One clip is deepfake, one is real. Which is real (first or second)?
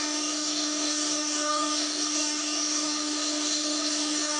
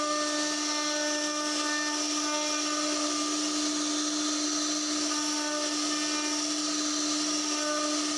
second